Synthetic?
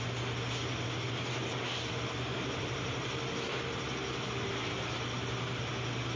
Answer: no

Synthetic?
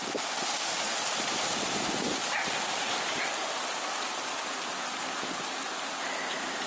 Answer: no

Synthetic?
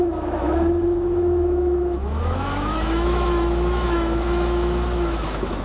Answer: yes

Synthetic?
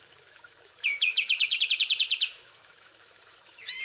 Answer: yes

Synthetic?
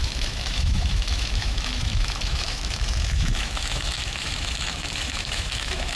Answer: yes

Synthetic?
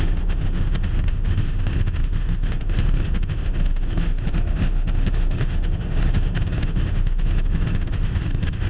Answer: yes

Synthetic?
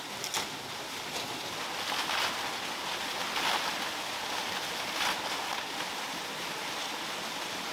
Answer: no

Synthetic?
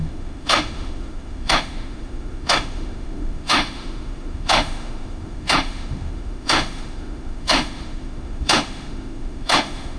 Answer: yes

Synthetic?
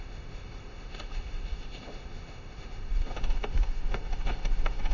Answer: yes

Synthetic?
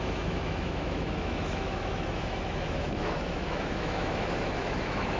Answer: yes